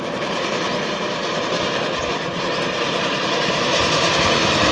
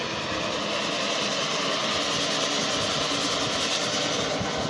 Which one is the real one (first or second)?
second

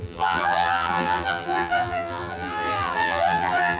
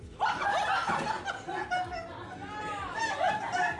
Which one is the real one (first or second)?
second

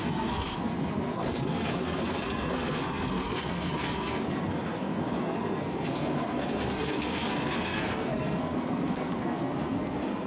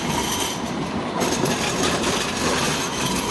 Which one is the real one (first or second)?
second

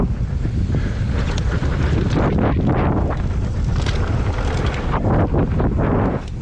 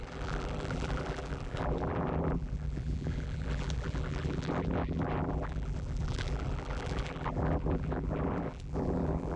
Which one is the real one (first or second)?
first